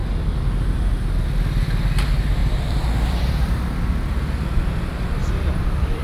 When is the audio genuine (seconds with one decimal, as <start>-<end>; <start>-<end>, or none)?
0.9-2.4; 3.5-5.2